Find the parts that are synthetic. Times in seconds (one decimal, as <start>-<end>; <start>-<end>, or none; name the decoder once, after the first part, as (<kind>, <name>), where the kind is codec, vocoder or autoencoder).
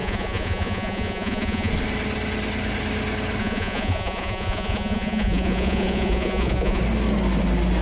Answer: 0.0-1.7 (vocoder, Vocos); 3.4-6.8